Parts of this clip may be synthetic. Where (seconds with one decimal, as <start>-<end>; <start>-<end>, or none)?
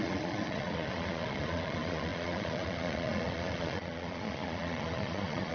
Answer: 0.0-5.5